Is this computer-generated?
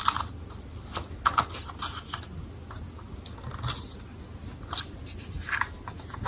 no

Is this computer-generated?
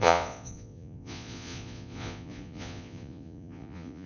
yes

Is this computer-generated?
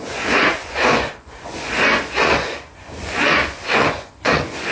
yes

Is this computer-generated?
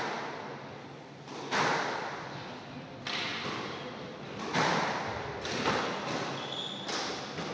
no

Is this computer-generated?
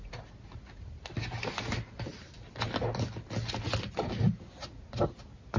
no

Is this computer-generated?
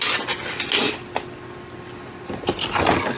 no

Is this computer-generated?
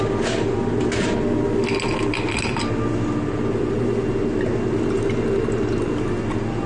no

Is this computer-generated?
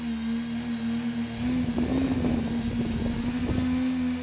no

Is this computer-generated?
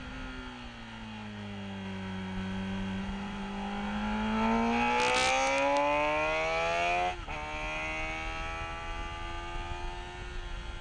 no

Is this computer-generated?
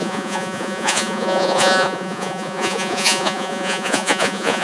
yes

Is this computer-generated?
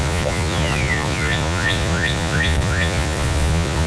yes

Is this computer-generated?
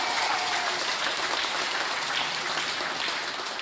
no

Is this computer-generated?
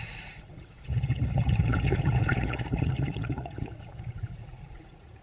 yes